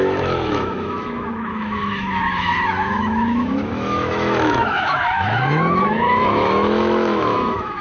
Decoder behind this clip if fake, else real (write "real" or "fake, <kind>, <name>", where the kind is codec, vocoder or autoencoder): fake, autoencoder, DAC-VAE